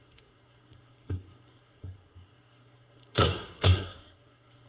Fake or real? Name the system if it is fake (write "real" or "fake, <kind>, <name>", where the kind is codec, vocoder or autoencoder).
fake, codec, SNAC